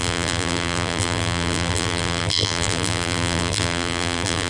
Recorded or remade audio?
remade